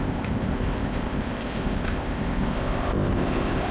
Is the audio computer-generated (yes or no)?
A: yes